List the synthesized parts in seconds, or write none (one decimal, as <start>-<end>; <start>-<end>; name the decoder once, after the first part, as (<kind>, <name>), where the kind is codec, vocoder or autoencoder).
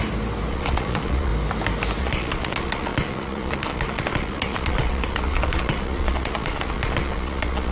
0.5-1.3 (vocoder, Vocos); 2.0-7.7